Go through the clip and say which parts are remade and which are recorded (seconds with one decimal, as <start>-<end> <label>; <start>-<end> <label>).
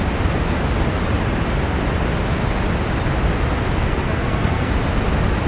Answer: 0.0-3.8 recorded; 3.8-4.7 remade; 4.7-5.5 recorded